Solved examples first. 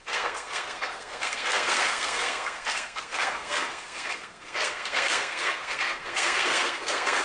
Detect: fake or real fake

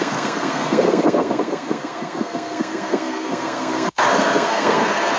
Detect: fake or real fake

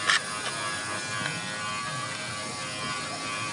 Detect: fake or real real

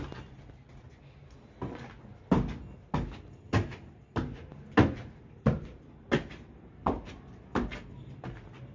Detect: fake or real real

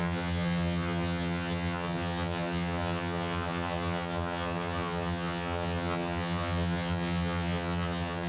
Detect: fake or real fake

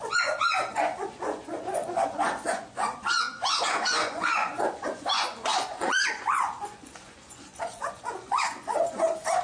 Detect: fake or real fake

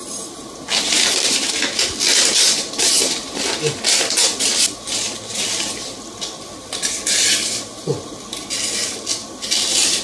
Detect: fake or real real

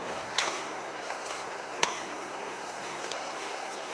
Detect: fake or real fake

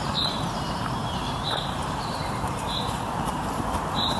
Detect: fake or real fake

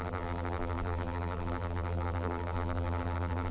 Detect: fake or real fake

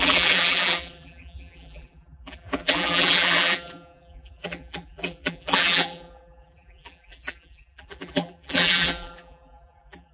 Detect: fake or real fake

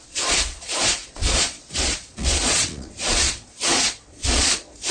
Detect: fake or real fake